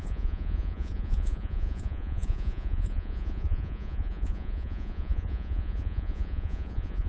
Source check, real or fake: fake